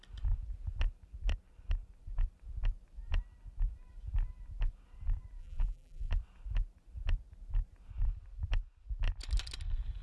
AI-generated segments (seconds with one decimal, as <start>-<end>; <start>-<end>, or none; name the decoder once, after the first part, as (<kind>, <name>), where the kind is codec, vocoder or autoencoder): 5.4-6.1 (vocoder, BigVGAN v2)